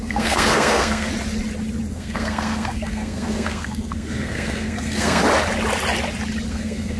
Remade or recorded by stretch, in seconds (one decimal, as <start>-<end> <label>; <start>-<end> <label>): 0.0-1.1 remade; 1.1-1.9 recorded; 1.9-5.2 remade; 5.2-6.5 recorded; 6.5-7.0 remade